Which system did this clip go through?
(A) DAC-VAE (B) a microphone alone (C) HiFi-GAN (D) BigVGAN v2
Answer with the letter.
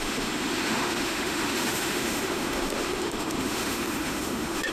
A